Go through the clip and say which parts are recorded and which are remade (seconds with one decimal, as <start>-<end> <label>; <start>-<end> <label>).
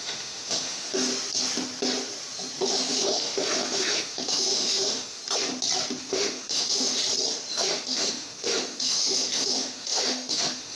0.0-1.1 remade; 1.1-2.7 recorded; 2.7-5.2 remade; 5.2-6.0 recorded; 6.0-7.0 remade; 7.0-7.5 recorded; 7.5-10.8 remade